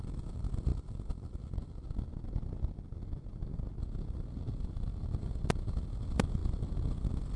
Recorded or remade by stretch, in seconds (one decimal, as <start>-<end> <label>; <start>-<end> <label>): 0.0-7.4 recorded